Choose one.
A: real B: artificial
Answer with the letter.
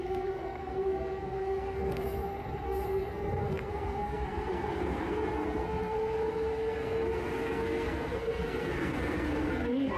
B